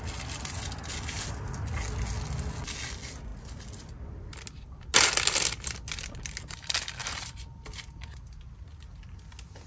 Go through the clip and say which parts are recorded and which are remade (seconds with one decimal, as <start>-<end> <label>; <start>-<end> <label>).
0.0-9.7 recorded